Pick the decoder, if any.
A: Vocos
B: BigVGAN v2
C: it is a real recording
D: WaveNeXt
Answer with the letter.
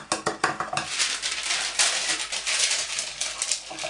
C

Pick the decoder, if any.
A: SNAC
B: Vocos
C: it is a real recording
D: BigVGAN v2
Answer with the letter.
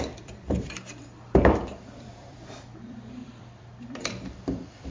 D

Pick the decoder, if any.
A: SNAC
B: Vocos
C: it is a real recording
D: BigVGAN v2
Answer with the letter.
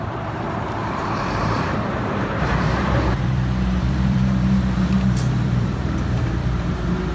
D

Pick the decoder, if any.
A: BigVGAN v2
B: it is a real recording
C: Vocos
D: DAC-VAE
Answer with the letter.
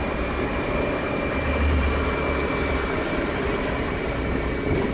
A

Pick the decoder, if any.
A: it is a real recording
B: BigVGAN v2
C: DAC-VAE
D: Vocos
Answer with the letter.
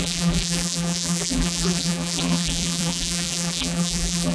B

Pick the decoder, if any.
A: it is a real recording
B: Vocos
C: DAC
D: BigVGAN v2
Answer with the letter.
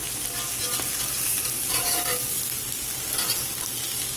A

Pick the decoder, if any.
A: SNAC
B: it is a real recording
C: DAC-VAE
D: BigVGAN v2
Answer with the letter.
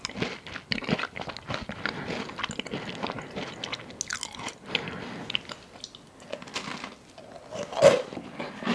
B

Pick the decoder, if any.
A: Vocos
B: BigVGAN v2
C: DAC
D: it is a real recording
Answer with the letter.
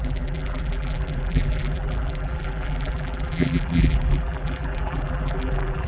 B